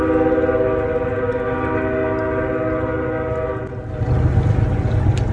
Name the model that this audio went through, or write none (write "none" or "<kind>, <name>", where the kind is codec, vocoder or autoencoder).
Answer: none